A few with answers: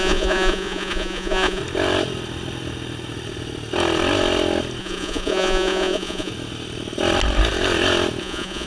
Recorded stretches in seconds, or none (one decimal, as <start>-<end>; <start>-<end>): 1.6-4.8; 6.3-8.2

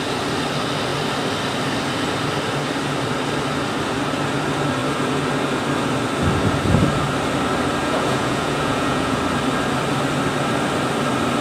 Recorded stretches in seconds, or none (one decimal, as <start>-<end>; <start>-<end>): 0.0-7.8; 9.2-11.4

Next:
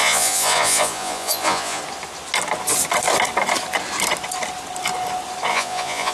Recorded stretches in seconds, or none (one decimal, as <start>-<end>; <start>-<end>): 1.8-5.5

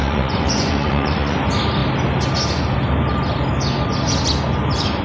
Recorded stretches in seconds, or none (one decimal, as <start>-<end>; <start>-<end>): 1.4-5.0

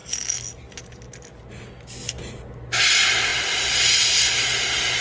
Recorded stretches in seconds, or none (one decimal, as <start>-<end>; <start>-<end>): 0.0-5.0